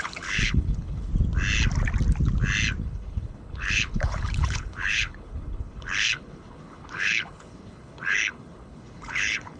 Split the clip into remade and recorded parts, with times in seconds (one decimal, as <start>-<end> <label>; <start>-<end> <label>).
0.0-1.1 remade; 1.1-2.8 recorded; 2.8-9.6 remade